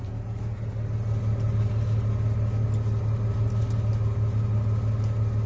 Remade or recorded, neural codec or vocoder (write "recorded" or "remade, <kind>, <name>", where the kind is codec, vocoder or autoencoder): recorded